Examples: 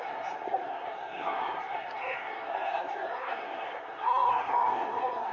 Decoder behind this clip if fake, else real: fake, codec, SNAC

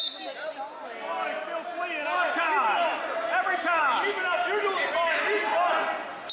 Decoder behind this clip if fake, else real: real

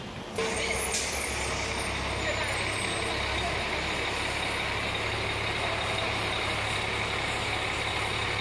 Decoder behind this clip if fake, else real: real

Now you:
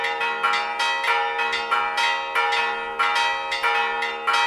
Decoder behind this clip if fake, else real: real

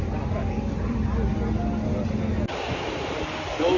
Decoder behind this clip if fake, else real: real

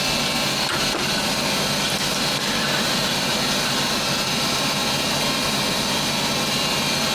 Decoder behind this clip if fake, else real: real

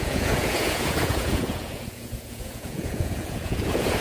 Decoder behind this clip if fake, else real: fake, vocoder, Vocos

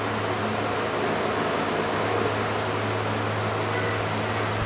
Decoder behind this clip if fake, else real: real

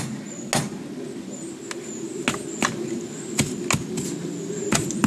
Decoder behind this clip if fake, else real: real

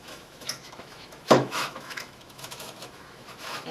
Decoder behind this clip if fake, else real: fake, autoencoder, DAC-VAE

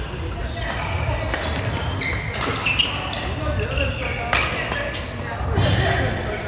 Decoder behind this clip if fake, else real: real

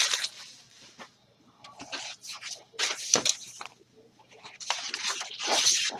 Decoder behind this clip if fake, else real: fake, vocoder, BigVGAN v2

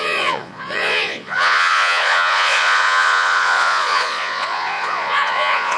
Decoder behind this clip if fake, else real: fake, vocoder, Vocos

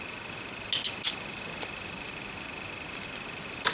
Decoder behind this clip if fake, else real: real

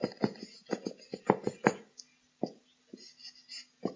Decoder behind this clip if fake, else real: real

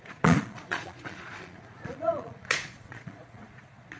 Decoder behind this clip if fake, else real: fake, vocoder, Vocos